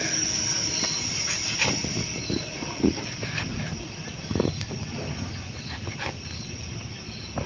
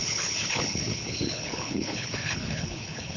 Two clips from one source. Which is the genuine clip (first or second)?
first